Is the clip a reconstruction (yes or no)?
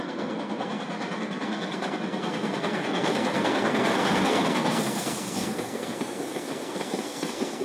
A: yes